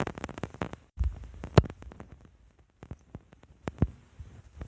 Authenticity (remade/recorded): remade